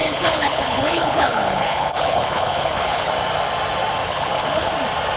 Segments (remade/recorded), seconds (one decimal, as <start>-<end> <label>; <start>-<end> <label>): 0.0-3.1 remade; 3.1-4.0 recorded; 4.0-4.7 remade; 4.7-5.2 recorded

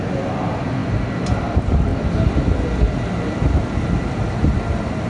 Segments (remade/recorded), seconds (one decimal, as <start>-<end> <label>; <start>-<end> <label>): 0.0-5.1 recorded